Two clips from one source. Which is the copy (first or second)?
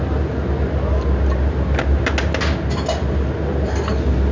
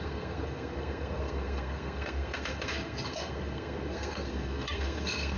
second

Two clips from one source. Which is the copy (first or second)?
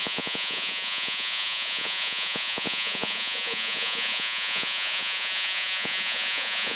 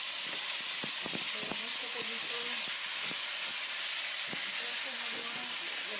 first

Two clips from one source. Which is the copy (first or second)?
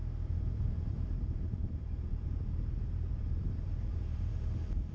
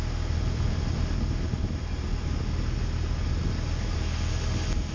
first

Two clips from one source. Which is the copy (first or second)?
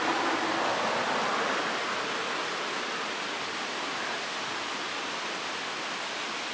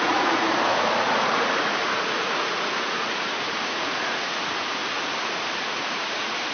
second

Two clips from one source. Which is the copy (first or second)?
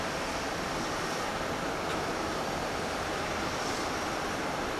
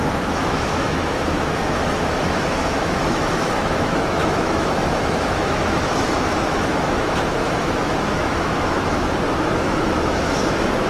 second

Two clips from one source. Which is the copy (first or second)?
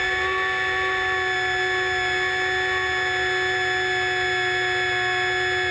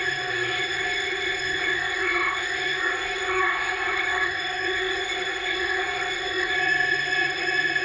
second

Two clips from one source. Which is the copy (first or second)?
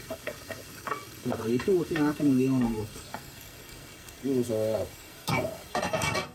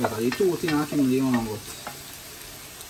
first